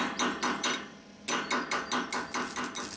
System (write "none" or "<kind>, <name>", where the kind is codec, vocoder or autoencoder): none